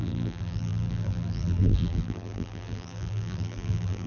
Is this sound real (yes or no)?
no